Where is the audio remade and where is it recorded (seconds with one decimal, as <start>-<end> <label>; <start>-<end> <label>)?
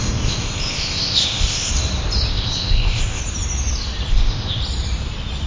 0.0-1.7 remade; 1.7-2.3 recorded; 2.3-3.2 remade; 3.2-4.1 recorded; 4.1-4.6 remade; 4.6-5.5 recorded